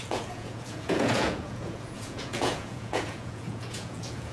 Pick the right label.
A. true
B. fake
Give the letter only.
B